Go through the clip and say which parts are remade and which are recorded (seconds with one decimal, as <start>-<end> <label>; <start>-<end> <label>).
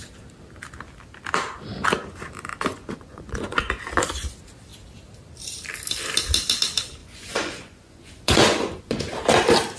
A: 0.0-2.7 recorded; 2.7-3.6 remade; 3.6-7.0 recorded; 7.0-9.0 remade; 9.0-9.8 recorded